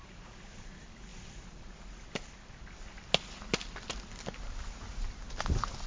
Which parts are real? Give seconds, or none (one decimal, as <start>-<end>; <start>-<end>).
0.0-5.9